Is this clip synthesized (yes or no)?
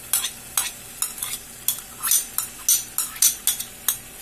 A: no